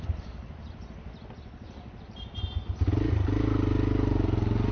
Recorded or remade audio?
recorded